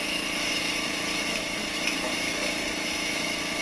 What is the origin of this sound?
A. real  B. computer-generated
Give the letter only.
B